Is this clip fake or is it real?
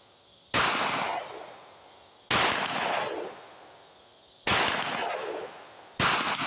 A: real